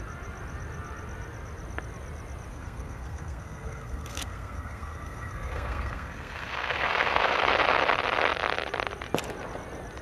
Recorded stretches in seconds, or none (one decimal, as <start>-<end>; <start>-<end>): 0.0-2.5; 7.4-10.0